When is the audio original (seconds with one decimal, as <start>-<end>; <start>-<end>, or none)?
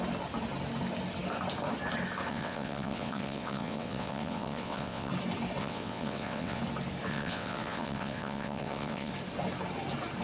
0.0-2.3; 5.1-5.6; 6.6-7.1; 9.1-10.2